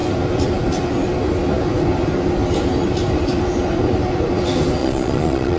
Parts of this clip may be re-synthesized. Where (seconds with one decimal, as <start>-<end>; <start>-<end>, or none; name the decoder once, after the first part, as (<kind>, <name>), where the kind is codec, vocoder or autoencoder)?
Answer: 4.8-5.6 (vocoder, Vocos)